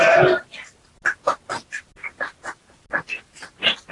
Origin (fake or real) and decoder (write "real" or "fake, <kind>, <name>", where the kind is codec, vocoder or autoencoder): real